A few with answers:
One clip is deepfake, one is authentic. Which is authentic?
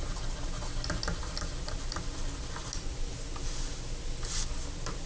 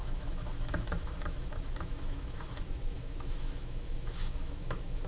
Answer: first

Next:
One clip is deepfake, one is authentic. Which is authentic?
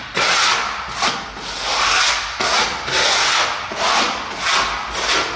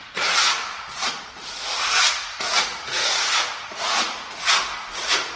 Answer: first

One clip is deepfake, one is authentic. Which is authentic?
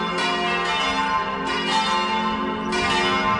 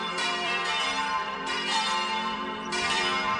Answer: first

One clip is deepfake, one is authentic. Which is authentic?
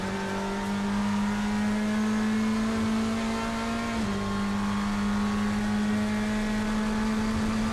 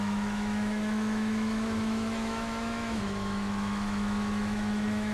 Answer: first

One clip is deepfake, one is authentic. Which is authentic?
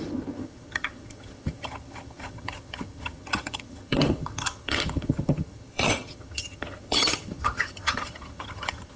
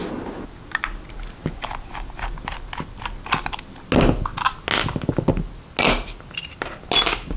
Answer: second